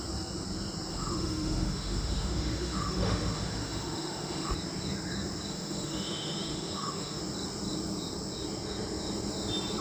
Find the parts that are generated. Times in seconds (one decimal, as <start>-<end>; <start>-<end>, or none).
0.9-4.5; 5.5-7.2